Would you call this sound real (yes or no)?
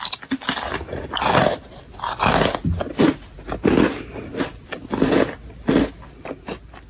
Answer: yes